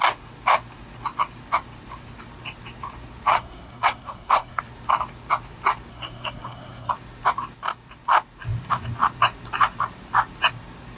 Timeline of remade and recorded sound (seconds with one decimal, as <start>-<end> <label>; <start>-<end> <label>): 0.0-3.3 recorded; 3.3-4.6 remade; 4.6-5.9 recorded; 5.9-6.9 remade; 6.9-11.0 recorded